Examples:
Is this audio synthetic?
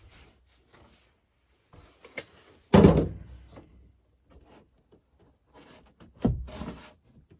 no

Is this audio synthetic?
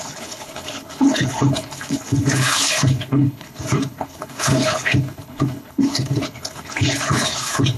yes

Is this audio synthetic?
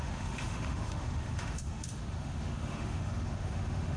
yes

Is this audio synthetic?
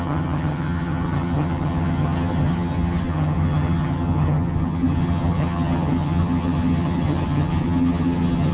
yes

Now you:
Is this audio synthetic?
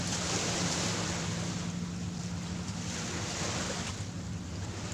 no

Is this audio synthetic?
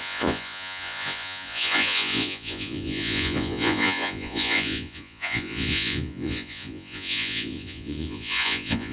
yes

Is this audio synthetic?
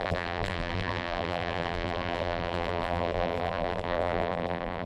yes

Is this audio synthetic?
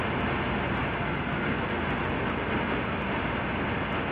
no